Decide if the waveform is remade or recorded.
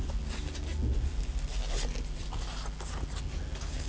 recorded